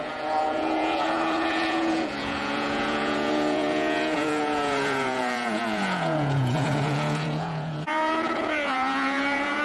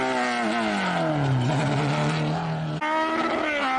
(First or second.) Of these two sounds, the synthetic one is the first